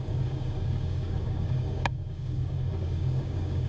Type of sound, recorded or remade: remade